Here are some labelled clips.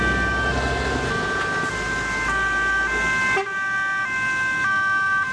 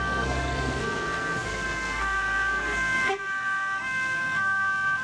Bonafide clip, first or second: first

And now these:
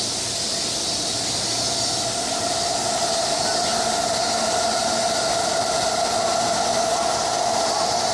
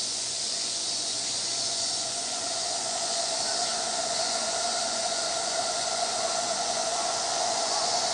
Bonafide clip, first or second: first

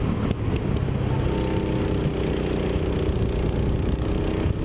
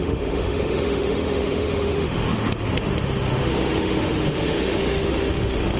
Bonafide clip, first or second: first